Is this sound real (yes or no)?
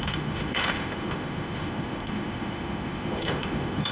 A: no